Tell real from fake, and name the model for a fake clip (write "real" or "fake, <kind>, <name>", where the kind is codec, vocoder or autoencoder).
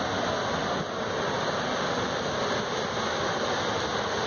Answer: real